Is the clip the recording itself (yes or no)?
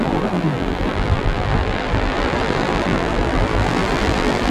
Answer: no